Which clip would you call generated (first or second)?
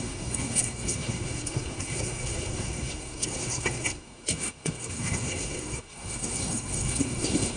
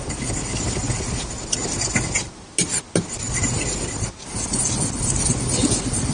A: first